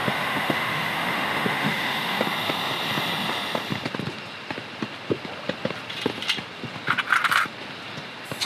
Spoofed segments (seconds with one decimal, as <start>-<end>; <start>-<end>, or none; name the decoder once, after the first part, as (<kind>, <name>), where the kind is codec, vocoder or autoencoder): 0.0-2.2 (autoencoder, DAC-VAE)